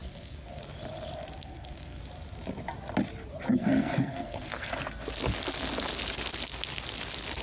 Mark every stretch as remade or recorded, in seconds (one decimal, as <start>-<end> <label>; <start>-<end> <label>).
0.0-0.6 remade; 0.6-1.4 recorded; 1.4-2.0 remade; 2.0-3.5 recorded; 3.5-4.7 remade; 4.7-7.4 recorded